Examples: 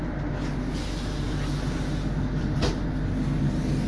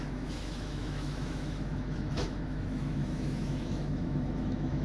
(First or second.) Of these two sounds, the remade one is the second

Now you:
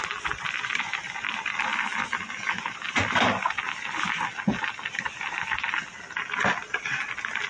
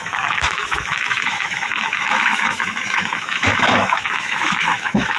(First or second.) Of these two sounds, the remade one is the second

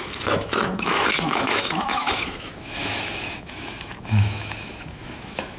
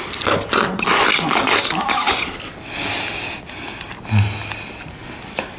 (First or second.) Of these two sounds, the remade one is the first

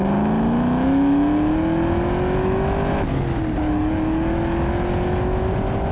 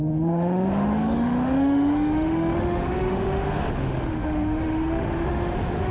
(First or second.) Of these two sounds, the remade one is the second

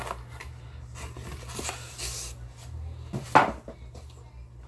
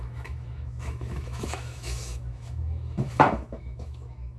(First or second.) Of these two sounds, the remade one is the second